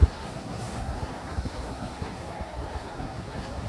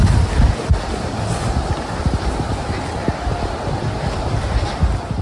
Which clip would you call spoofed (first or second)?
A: first